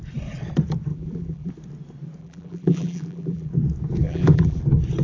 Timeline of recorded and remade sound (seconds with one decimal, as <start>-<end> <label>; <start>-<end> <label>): 0.0-0.9 recorded; 0.9-1.5 remade; 1.5-2.2 recorded; 2.2-3.5 remade; 3.5-4.0 recorded; 4.0-4.6 remade; 4.6-5.0 recorded